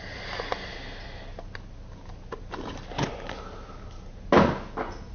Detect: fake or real real